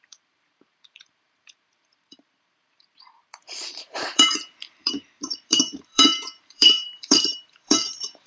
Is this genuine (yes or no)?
no